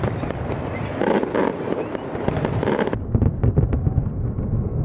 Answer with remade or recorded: recorded